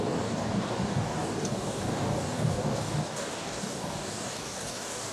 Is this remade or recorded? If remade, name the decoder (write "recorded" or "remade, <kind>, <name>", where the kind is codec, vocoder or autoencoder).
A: remade, codec, DAC